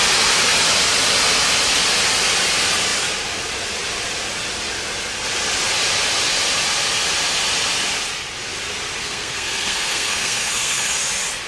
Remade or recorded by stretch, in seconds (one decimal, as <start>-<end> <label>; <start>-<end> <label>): 0.0-9.0 recorded; 9.0-11.0 remade; 11.0-11.5 recorded